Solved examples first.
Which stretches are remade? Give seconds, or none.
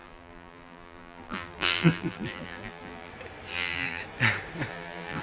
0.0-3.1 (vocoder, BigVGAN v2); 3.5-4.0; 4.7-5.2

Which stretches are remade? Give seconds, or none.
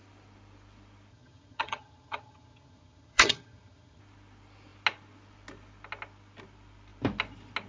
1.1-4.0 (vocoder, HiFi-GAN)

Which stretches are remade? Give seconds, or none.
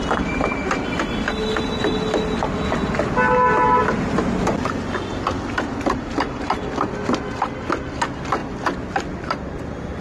none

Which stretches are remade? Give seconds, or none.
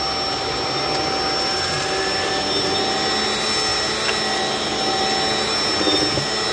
none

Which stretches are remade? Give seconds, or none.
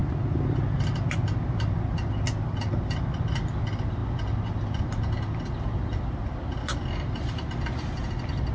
none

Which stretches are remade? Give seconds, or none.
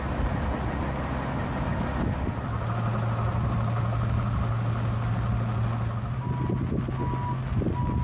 none